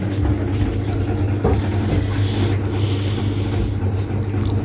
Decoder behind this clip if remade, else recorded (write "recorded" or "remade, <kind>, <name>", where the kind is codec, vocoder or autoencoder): recorded